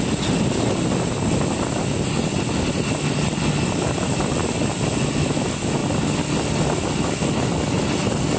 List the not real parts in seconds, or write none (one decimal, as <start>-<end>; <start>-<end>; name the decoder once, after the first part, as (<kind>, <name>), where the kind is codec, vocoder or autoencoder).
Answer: none

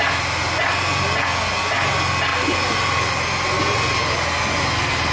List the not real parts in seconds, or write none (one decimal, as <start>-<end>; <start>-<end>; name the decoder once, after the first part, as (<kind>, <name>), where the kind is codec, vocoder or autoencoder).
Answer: none

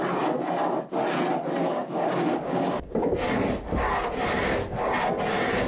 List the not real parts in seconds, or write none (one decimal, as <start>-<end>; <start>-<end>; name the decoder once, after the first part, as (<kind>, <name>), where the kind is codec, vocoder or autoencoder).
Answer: 1.6-3.1 (codec, DAC)

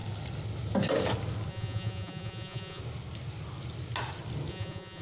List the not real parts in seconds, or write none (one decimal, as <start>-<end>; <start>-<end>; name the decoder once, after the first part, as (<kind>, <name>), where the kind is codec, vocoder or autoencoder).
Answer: 1.5-2.8 (vocoder, Vocos); 4.5-5.0

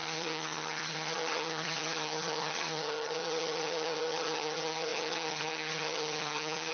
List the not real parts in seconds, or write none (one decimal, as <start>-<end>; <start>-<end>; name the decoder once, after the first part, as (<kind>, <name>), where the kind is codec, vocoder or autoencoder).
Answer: 0.0-6.7 (vocoder, HiFi-GAN)

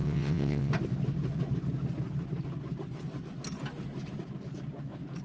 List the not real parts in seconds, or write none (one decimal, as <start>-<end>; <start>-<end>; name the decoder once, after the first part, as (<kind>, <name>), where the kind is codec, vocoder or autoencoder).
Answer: 0.0-0.7 (vocoder, WaveNeXt)

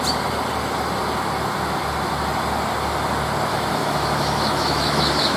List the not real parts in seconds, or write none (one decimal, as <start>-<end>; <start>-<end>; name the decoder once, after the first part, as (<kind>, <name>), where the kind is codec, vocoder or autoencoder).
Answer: 3.5-5.4 (autoencoder, DAC-VAE)